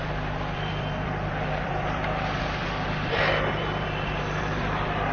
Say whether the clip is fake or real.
fake